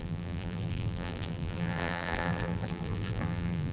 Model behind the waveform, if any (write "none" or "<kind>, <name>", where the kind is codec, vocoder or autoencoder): vocoder, BigVGAN v2